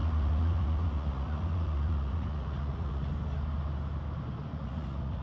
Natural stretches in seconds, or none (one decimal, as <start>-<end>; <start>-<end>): 3.1-4.5